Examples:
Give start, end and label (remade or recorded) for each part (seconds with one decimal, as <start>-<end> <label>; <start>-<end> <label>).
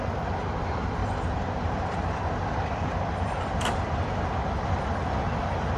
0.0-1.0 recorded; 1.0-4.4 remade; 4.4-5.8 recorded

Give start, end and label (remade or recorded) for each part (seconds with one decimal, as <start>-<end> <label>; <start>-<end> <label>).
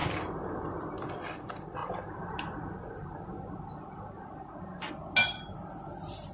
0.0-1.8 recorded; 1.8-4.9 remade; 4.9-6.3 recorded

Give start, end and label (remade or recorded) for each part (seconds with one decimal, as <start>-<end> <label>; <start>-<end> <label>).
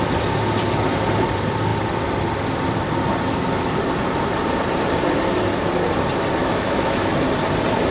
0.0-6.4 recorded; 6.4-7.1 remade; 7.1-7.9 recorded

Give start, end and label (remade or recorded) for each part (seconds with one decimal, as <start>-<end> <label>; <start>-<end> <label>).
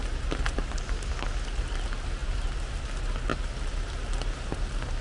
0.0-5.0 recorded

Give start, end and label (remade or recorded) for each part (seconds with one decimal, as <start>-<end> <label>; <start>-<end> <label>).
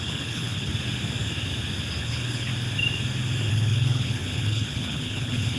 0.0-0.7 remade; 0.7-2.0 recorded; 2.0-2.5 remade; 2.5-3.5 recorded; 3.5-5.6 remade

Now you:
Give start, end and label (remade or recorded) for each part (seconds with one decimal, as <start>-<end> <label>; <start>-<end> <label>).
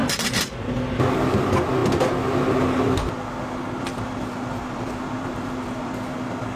0.0-3.9 recorded; 3.9-5.9 remade; 5.9-6.6 recorded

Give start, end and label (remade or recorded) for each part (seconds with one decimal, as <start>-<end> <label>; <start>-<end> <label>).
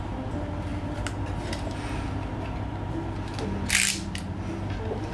0.0-5.1 recorded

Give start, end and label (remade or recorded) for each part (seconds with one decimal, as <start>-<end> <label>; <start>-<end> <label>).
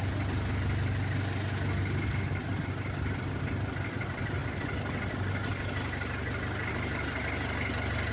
0.0-8.1 recorded